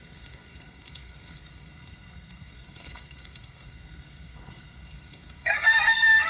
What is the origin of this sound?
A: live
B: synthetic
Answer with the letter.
B